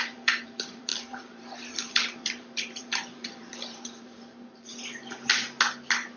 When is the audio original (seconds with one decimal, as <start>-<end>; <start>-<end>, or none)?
4.7-6.2